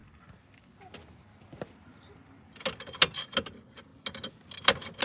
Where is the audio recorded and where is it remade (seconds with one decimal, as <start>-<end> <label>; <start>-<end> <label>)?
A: 0.0-5.0 recorded